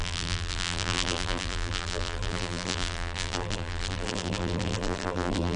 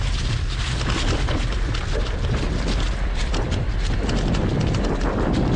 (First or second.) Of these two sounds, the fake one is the first